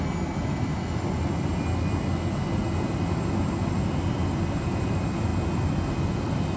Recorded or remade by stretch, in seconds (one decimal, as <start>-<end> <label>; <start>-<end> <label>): 0.0-6.6 recorded